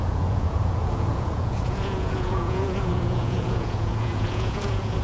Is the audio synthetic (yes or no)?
yes